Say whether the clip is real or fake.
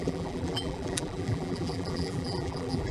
fake